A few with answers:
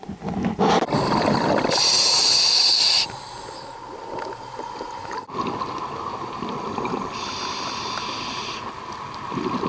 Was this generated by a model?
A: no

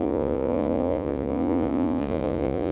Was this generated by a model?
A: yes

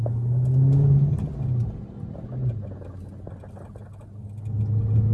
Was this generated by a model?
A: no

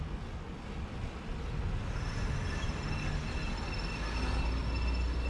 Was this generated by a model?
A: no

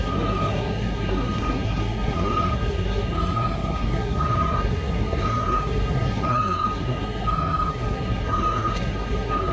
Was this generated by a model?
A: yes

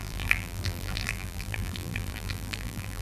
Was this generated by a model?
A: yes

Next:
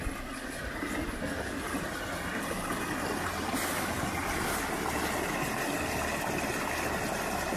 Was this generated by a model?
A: no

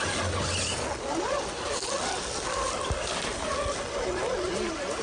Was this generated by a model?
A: no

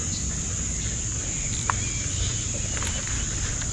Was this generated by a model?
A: no